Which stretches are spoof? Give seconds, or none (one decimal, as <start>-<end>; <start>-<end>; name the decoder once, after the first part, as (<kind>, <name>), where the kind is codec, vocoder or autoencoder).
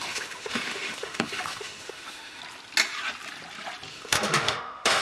0.0-2.4 (autoencoder, DAC-VAE); 3.9-5.0